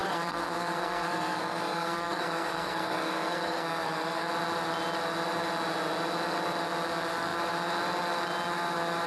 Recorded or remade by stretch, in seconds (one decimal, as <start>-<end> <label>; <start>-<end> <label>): 0.0-4.3 remade; 4.3-9.1 recorded